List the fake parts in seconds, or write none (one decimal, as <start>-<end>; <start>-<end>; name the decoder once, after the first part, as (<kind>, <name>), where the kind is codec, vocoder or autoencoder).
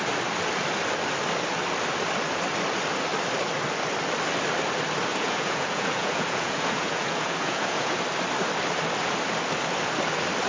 5.1-8.0 (vocoder, Vocos)